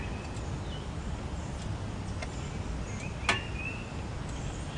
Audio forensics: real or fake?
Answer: real